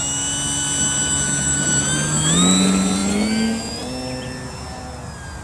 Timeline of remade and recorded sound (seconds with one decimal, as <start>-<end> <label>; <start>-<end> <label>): 0.0-5.4 recorded